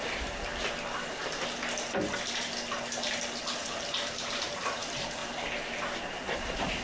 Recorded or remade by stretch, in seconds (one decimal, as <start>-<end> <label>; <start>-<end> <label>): 0.0-0.5 remade; 0.5-3.6 recorded; 3.6-5.2 remade; 5.2-6.8 recorded